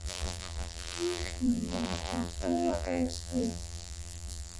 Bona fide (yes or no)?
no